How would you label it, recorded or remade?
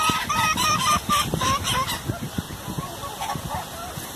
recorded